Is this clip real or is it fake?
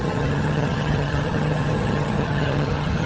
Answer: fake